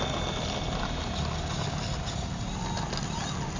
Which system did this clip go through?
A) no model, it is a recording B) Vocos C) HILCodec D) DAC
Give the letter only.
A